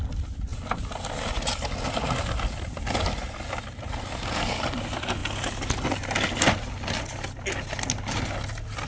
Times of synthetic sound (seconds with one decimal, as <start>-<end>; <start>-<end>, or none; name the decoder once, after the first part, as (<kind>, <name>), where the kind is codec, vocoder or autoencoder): none